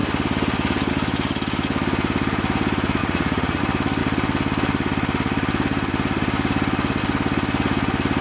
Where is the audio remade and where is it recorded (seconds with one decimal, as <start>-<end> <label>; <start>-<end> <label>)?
0.0-3.0 recorded; 3.0-3.6 remade; 3.6-8.2 recorded